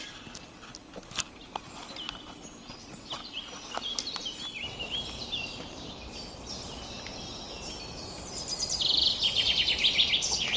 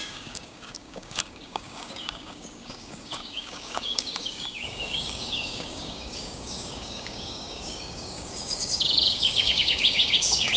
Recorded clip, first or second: first